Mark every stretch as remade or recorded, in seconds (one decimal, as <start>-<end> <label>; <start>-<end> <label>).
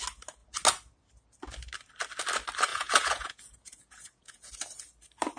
0.0-2.7 recorded; 2.7-4.5 remade; 4.5-5.4 recorded